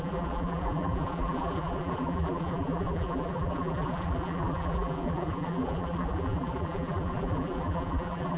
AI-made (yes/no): yes